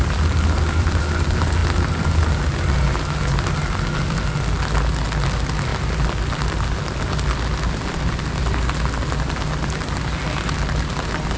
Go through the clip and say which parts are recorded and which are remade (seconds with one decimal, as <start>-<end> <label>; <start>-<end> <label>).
0.0-11.4 recorded